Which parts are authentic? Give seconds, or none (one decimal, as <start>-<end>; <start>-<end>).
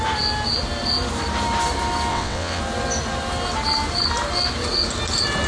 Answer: 0.0-2.1; 2.6-5.5